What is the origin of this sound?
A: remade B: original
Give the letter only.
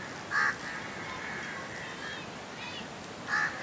A